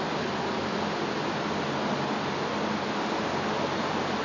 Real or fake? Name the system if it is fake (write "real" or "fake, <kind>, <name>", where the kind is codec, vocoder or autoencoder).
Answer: real